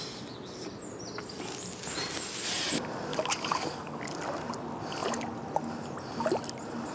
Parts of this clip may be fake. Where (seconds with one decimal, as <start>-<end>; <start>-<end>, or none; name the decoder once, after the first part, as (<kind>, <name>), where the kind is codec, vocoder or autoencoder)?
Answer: 3.1-4.0 (codec, DAC)